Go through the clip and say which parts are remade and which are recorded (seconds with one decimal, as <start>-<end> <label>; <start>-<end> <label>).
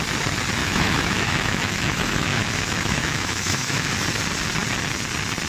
0.0-0.6 recorded; 0.6-3.9 remade; 3.9-5.5 recorded